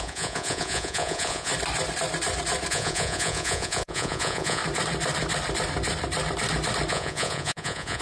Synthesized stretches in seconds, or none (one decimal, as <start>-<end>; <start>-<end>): 0.0-1.5; 2.7-4.6; 6.9-8.0